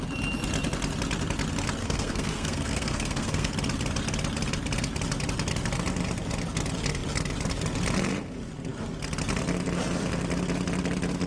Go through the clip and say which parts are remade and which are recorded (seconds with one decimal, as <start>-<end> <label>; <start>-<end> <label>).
0.0-1.8 recorded; 1.8-3.5 remade; 3.5-11.3 recorded